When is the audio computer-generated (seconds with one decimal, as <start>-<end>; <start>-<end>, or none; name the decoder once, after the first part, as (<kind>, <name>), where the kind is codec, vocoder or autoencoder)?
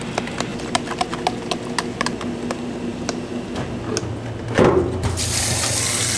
none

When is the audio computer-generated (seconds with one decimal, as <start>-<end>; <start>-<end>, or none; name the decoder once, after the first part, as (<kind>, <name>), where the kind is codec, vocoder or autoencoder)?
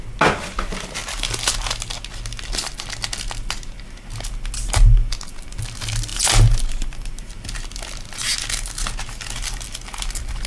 none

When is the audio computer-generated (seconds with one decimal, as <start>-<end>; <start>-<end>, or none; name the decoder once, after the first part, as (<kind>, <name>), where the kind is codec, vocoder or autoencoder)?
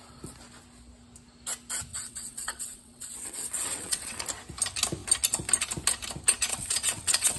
1.9-4.2 (vocoder, WaveNeXt); 6.5-7.4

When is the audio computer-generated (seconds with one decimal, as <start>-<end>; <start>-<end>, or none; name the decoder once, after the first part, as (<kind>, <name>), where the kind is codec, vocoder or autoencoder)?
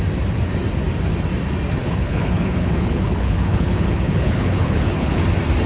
1.8-5.2 (codec, HILCodec)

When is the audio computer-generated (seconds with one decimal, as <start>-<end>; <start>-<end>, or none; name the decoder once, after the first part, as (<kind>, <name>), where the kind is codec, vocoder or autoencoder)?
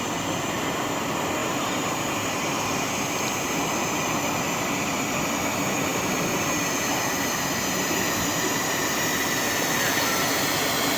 1.4-2.8 (vocoder, BigVGAN v2); 5.9-8.0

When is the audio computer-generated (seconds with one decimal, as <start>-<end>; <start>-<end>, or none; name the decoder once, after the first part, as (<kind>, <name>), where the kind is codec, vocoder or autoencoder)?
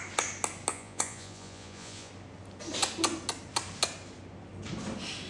0.7-2.1 (vocoder, Vocos)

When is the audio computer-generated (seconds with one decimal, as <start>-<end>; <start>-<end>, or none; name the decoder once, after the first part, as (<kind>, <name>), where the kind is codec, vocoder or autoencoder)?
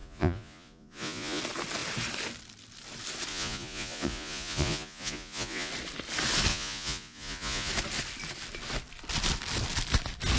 0.0-1.4 (vocoder, Vocos); 3.3-5.7; 6.5-7.7